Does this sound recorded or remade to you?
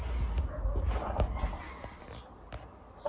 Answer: recorded